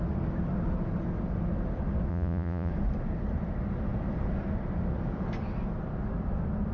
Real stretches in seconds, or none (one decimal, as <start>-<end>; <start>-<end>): 0.0-2.1; 2.7-6.7